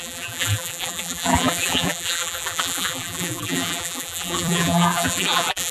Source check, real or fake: fake